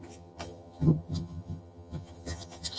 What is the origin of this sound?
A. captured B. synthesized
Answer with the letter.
B